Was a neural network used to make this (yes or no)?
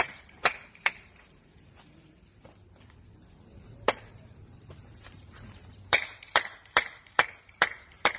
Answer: yes